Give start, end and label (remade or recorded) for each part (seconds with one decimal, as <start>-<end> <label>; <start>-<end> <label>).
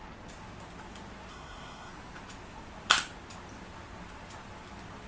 0.0-1.3 recorded; 1.3-1.9 remade; 1.9-5.1 recorded